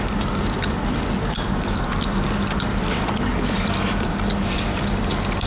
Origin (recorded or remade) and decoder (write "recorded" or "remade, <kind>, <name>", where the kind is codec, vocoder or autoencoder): remade, vocoder, BigVGAN v2